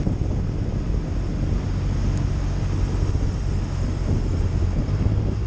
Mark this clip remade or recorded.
recorded